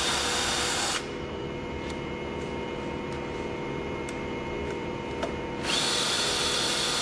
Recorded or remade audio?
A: remade